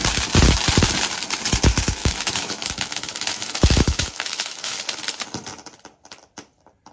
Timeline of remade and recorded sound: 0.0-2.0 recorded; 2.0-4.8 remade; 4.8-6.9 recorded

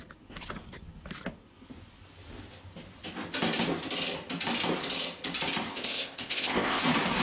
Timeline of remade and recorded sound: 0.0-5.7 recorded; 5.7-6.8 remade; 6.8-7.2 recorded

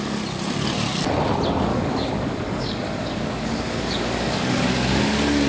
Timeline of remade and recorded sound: 0.0-1.7 recorded; 1.7-5.0 remade; 5.0-5.5 recorded

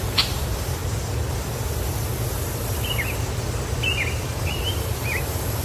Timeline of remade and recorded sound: 0.0-0.8 remade; 0.8-4.2 recorded; 4.2-5.6 remade

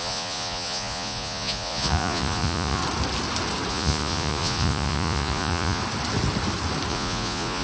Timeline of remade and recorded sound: 0.0-2.8 remade; 2.8-3.7 recorded; 3.7-5.8 remade; 5.8-6.9 recorded; 6.9-7.6 remade